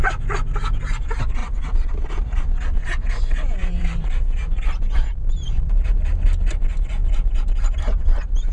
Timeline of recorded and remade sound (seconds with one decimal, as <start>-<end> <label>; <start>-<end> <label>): 0.0-3.6 recorded; 3.6-5.9 remade; 5.9-7.0 recorded; 7.0-7.7 remade; 7.7-8.5 recorded